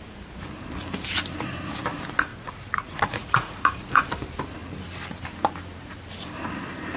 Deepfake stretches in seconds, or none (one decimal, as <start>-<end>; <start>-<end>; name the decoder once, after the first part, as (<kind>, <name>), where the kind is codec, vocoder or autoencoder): 2.3-4.0 (vocoder, Vocos)